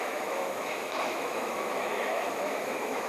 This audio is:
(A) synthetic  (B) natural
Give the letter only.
A